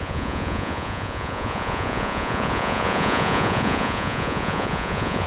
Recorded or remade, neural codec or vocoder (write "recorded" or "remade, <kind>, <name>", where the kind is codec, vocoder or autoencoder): remade, vocoder, Vocos